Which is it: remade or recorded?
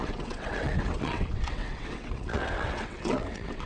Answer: remade